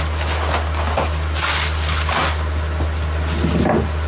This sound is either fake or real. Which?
real